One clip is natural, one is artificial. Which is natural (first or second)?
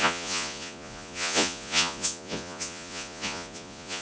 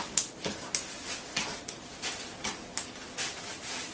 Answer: second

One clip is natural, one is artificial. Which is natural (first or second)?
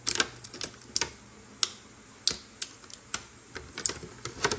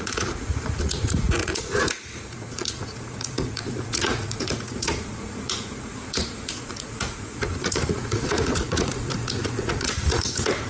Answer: first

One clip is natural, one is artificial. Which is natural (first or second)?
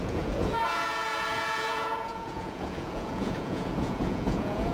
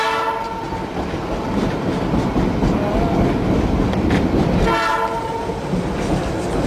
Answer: second